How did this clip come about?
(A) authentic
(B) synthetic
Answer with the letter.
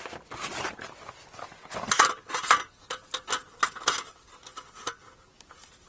A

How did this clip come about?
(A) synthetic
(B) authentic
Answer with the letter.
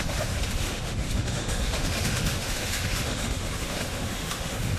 A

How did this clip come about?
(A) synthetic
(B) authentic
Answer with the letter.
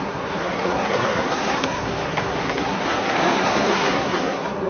A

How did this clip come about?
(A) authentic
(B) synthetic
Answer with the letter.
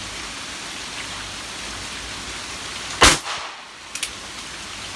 A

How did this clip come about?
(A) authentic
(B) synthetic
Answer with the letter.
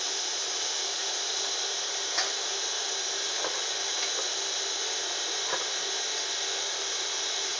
A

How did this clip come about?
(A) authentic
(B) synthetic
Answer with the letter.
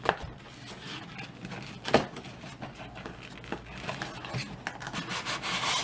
A